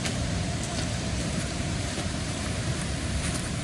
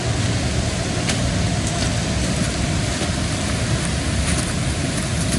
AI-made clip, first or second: first